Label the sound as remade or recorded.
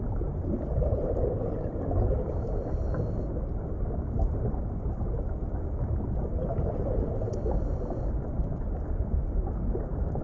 recorded